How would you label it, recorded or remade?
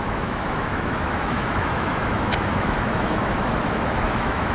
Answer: remade